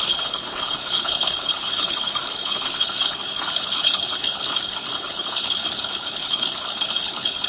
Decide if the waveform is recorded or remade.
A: remade